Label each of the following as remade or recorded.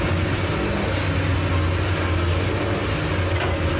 recorded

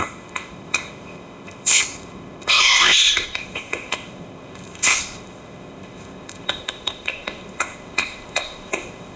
remade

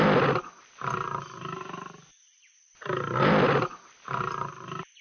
recorded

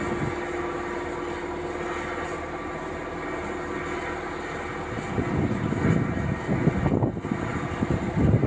recorded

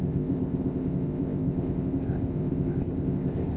remade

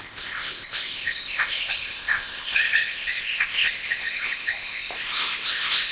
remade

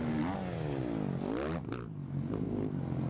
recorded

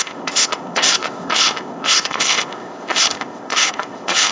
remade